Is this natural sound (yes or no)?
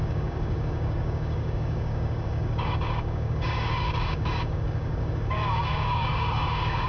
no